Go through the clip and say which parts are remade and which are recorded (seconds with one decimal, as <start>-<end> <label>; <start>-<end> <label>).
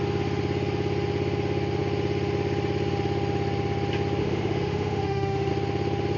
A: 0.0-4.2 recorded; 4.2-5.5 remade; 5.5-6.2 recorded